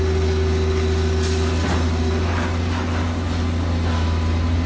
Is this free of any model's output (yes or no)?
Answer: yes